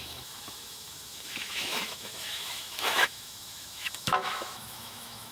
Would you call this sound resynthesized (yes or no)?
yes